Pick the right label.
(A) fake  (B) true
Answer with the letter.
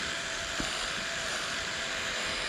A